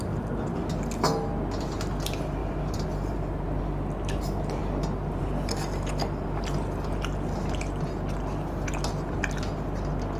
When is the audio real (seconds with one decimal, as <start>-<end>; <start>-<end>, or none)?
0.0-2.4; 3.6-10.2